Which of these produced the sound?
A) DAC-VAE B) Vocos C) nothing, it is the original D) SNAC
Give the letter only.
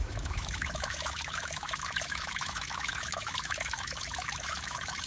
A